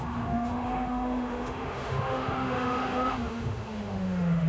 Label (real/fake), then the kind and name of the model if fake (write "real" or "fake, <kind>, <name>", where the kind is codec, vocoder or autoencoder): fake, autoencoder, DAC-VAE